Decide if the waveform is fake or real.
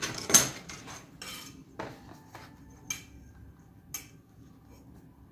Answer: real